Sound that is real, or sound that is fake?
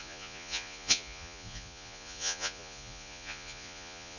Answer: fake